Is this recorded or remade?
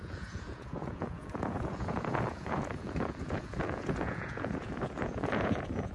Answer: remade